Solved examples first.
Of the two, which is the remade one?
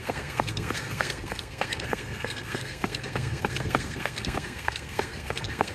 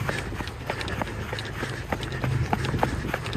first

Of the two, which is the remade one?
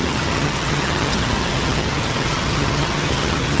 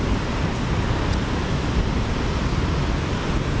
first